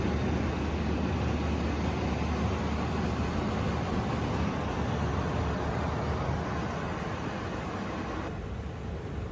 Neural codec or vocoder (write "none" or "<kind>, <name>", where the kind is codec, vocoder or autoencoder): none